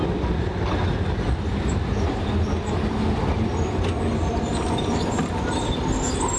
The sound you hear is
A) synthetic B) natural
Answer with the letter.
B